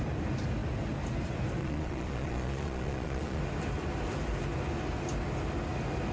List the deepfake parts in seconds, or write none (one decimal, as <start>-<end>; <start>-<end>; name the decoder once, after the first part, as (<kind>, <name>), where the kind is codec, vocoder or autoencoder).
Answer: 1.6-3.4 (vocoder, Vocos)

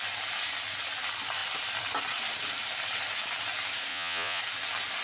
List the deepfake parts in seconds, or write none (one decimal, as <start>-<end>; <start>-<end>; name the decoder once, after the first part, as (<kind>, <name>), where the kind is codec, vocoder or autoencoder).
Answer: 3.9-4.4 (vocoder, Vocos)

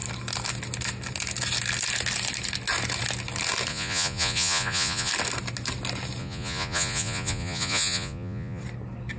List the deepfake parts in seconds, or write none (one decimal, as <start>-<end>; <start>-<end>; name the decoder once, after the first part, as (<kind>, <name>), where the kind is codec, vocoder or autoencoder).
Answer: 3.7-5.1 (vocoder, Vocos); 6.2-8.6

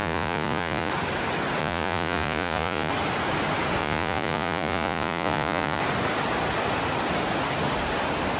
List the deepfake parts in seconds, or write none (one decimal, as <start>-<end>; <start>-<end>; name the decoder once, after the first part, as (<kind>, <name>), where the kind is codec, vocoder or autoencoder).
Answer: 0.0-0.9 (vocoder, Vocos); 1.6-2.9; 3.8-5.8

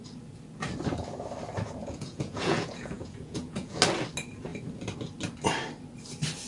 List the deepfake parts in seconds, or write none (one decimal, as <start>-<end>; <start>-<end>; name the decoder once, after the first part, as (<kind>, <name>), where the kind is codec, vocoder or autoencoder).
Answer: 1.8-3.8 (vocoder, Vocos)